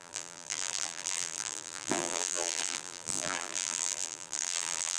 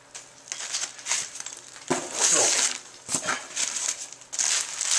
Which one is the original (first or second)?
second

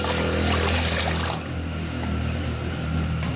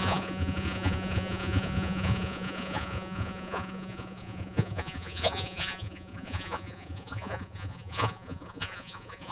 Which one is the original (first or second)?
first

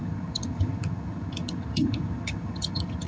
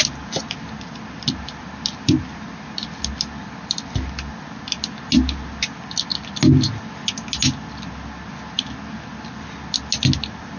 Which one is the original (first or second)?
second